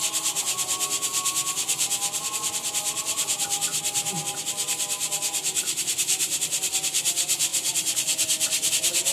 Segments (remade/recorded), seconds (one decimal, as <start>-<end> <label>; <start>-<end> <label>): 0.0-9.1 recorded